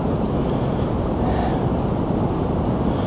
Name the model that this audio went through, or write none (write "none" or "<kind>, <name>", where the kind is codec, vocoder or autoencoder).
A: vocoder, BigVGAN v2